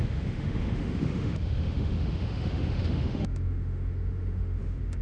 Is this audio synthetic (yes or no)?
yes